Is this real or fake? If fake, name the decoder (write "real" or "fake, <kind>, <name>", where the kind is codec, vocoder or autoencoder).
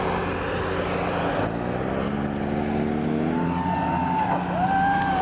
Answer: real